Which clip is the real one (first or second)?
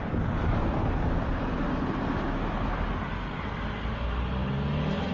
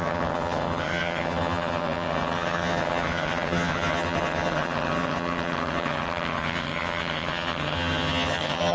first